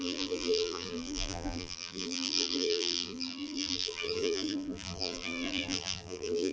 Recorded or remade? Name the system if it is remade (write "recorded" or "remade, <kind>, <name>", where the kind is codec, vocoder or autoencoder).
remade, vocoder, BigVGAN v2